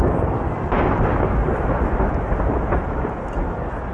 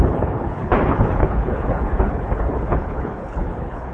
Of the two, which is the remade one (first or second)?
second